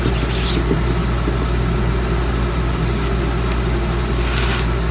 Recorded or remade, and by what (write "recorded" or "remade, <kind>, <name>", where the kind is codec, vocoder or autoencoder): recorded